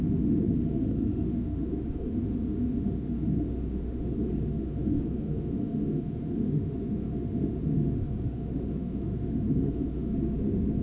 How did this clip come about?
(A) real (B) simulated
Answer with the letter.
B